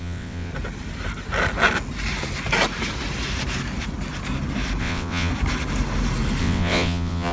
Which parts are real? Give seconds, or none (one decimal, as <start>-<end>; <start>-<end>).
0.5-4.8; 5.3-6.4